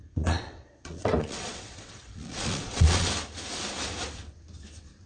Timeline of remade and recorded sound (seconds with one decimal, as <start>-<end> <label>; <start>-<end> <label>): 0.0-3.1 remade; 3.1-5.1 recorded